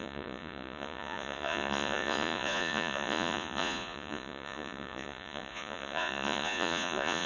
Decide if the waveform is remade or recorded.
remade